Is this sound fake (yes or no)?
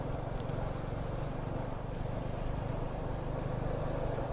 no